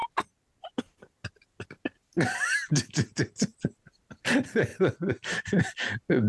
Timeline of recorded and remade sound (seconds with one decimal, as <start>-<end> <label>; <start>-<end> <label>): 0.0-4.7 recorded; 4.7-5.5 remade; 5.5-6.3 recorded